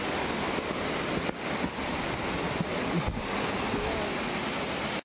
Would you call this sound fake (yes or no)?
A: no